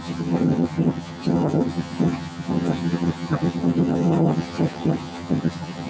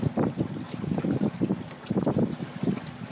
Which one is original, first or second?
second